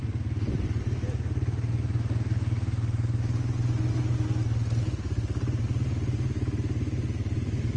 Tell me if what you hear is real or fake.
real